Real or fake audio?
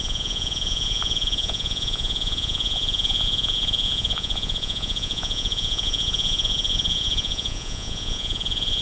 fake